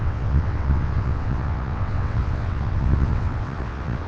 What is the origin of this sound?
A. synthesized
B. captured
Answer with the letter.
A